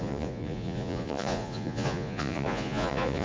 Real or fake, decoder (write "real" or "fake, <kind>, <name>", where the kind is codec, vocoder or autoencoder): fake, vocoder, Vocos